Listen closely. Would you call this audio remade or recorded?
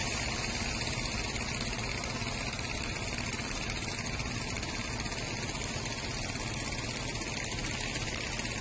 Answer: recorded